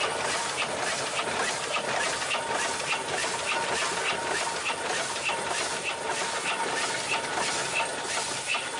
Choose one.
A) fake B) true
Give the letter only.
B